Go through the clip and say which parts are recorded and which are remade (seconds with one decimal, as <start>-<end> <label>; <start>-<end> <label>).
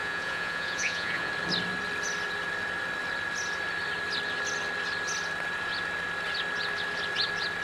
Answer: 0.0-1.3 remade; 1.3-7.6 recorded